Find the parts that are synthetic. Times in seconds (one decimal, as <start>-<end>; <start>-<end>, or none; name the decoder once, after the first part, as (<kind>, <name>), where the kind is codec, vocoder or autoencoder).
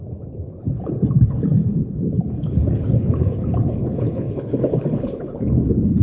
0.0-6.0 (codec, HILCodec)